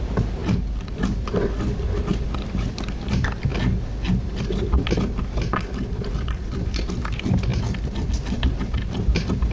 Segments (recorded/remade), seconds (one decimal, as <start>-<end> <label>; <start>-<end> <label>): 0.0-9.5 recorded